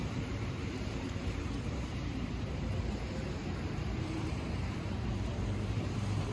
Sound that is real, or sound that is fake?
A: fake